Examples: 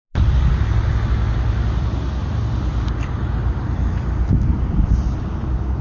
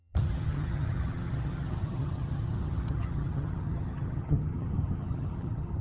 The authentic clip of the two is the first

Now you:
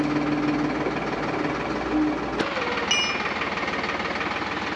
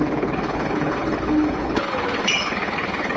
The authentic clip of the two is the first